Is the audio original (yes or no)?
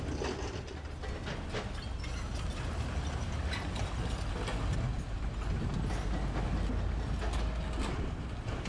yes